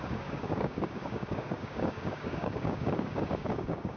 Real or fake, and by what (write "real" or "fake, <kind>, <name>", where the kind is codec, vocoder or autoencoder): fake, codec, DAC